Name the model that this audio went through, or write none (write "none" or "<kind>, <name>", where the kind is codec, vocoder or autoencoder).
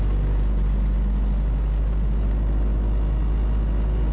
none